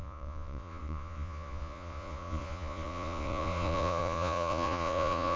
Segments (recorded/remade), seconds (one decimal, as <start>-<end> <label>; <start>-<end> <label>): 0.0-5.4 remade